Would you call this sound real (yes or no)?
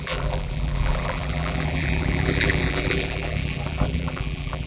no